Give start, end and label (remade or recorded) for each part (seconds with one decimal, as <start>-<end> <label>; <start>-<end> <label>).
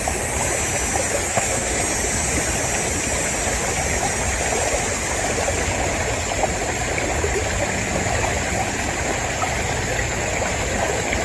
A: 0.0-1.3 recorded; 1.3-1.8 remade; 1.8-11.2 recorded